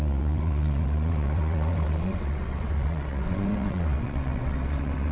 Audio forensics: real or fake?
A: fake